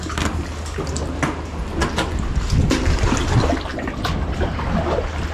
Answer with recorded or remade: recorded